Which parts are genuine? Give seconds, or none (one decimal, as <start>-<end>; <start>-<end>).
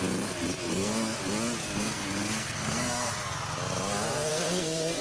0.0-0.7; 1.2-1.6; 3.1-4.3